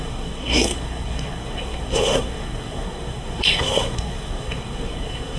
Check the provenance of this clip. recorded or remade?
remade